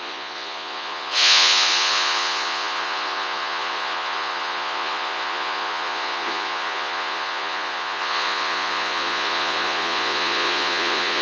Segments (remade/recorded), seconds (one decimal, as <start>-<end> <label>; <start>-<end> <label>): 0.0-11.2 remade